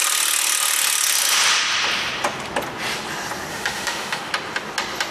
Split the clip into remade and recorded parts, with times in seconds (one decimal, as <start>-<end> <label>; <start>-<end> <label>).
0.0-3.5 recorded; 3.5-4.3 remade; 4.3-5.1 recorded